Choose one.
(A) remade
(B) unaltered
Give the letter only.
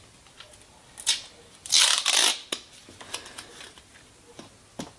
B